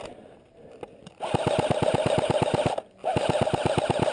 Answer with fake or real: real